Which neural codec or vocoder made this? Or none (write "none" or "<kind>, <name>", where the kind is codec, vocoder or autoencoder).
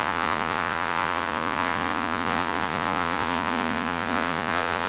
vocoder, Vocos